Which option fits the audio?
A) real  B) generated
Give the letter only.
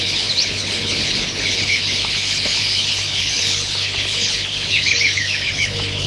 B